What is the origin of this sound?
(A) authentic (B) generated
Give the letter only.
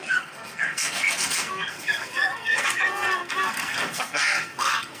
B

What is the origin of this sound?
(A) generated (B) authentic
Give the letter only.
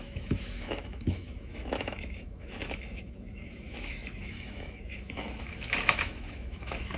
A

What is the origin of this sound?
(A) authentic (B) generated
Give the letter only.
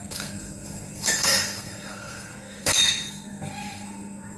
B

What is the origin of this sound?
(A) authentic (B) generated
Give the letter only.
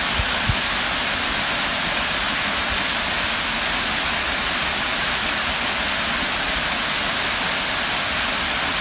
A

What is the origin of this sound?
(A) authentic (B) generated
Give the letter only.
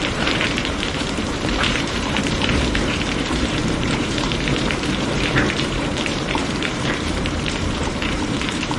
B